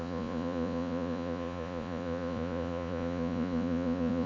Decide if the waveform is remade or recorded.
remade